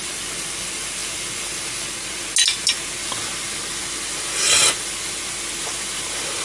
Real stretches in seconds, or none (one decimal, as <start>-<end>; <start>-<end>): 0.0-6.4